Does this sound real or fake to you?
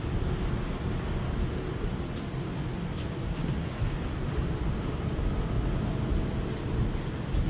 real